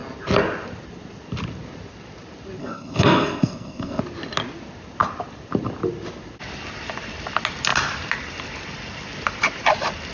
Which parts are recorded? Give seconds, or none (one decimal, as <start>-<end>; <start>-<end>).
0.0-2.6; 4.0-10.1